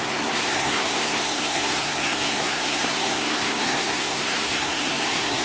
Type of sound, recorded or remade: remade